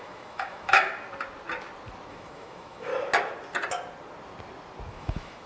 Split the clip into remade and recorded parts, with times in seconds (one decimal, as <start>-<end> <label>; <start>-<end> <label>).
0.0-0.9 remade; 0.9-2.1 recorded; 2.1-2.9 remade; 2.9-4.9 recorded; 4.9-5.5 remade